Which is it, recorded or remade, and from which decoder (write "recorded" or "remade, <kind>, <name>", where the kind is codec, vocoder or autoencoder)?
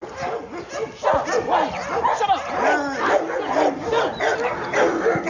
recorded